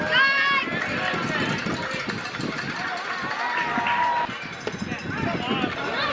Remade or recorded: recorded